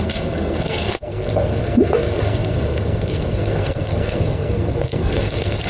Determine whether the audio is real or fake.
fake